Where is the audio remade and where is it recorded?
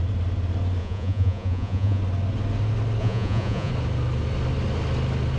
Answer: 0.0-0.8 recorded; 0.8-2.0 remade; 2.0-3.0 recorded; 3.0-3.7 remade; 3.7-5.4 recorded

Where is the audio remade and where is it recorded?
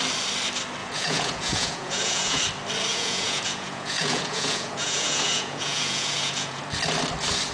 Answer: 0.0-0.8 recorded; 0.8-2.4 remade; 2.4-2.9 recorded; 2.9-6.6 remade; 6.6-7.5 recorded